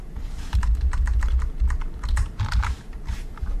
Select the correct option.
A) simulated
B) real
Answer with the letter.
A